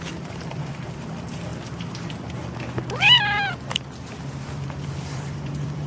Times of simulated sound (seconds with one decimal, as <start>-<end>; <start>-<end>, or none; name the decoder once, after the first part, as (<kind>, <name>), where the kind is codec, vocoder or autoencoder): 0.0-1.5 (vocoder, BigVGAN v2); 4.5-5.9